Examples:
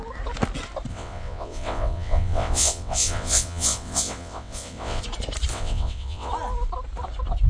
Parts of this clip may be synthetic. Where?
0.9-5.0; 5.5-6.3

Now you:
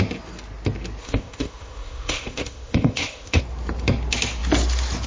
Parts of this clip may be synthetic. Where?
1.0-3.4

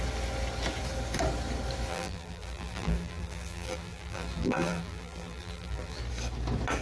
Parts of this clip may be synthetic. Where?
1.9-6.0

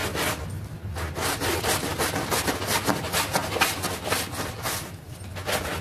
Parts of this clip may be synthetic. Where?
none

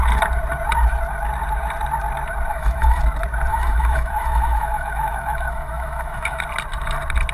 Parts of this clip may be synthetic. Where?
2.5-3.0; 3.5-6.4

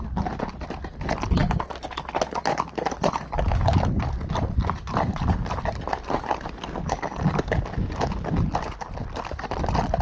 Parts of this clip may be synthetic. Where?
none

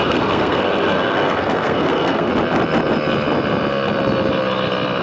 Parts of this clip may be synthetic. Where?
0.0-2.3